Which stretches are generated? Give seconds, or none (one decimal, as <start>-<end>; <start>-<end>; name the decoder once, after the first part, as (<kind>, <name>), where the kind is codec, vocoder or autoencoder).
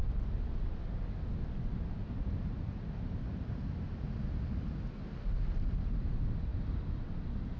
none